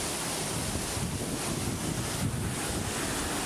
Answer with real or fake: real